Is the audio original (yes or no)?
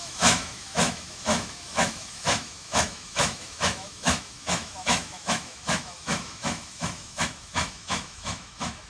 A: no